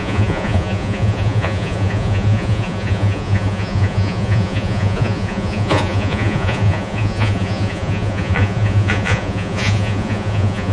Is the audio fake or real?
fake